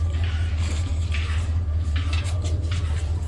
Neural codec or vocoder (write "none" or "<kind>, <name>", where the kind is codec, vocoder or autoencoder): vocoder, BigVGAN v2